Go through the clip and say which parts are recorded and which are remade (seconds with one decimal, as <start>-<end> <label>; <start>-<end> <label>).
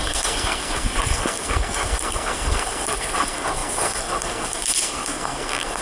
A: 0.0-5.8 remade